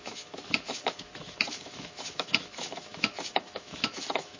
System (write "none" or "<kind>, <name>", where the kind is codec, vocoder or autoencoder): autoencoder, DAC-VAE